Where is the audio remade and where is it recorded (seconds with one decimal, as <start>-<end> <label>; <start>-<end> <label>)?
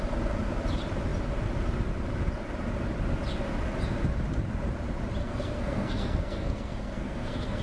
0.0-5.2 recorded; 5.2-7.6 remade